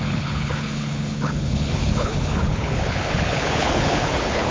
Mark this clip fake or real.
fake